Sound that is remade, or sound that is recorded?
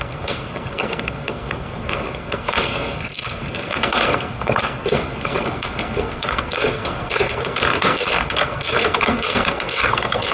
remade